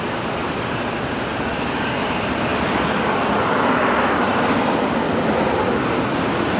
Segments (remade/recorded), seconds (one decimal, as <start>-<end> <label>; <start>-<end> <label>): 0.0-0.4 recorded; 0.4-1.0 remade; 1.0-6.6 recorded